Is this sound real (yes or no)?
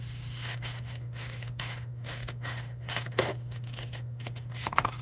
no